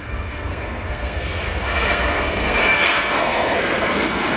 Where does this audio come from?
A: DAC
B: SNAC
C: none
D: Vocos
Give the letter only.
B